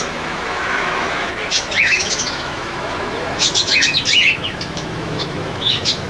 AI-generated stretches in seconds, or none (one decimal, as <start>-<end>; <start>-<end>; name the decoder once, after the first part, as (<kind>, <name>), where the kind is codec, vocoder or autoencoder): 0.0-6.1 (autoencoder, DAC-VAE)